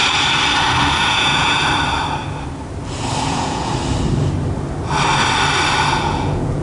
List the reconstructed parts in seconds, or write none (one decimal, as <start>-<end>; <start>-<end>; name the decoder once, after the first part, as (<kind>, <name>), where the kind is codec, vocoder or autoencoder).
0.9-1.6 (vocoder, Vocos); 3.2-3.7; 5.9-6.6